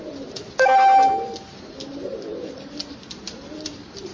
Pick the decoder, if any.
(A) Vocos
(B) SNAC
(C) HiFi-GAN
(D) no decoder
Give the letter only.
D